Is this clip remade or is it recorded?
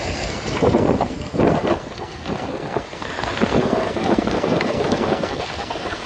remade